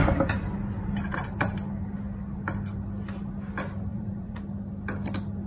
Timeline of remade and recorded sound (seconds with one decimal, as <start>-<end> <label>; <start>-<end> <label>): 0.0-3.9 recorded; 3.9-4.4 remade; 4.4-5.5 recorded